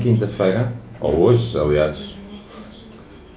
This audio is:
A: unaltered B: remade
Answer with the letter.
B